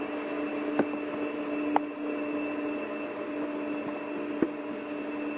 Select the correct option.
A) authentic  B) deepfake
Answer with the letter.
A